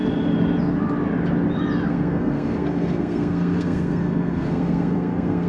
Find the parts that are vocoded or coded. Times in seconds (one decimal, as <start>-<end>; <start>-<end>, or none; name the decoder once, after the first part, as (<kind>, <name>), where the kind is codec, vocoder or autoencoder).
1.9-5.5 (codec, SNAC)